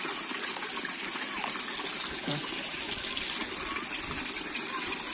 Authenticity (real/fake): real